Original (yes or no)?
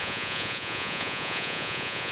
no